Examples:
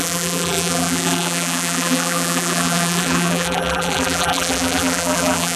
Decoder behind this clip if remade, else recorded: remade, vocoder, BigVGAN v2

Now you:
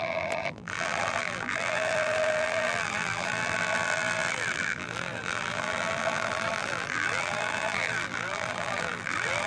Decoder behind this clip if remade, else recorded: remade, vocoder, BigVGAN v2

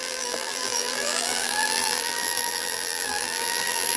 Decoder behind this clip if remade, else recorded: remade, vocoder, BigVGAN v2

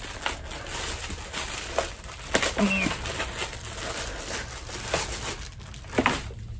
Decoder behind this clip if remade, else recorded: recorded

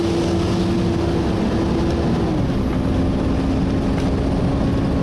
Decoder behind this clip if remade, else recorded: recorded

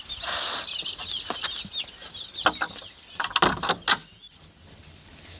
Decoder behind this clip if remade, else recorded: recorded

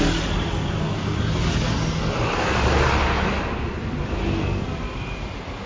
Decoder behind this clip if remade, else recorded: recorded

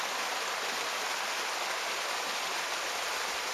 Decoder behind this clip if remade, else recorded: recorded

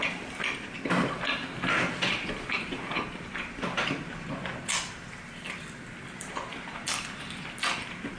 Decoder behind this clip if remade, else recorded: remade, vocoder, BigVGAN v2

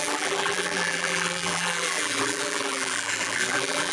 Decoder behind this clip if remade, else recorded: remade, vocoder, BigVGAN v2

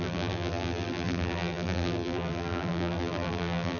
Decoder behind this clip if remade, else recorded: remade, vocoder, BigVGAN v2